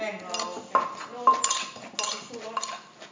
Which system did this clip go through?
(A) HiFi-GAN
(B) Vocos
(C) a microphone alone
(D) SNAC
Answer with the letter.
C